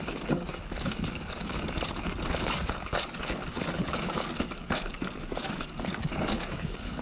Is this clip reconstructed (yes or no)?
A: yes